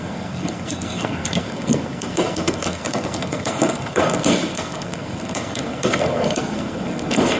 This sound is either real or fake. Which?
fake